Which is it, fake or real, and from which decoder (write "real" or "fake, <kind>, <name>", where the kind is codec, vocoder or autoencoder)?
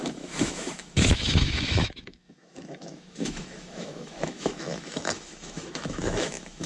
fake, autoencoder, DAC-VAE